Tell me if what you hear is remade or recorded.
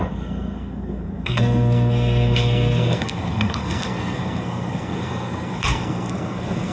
remade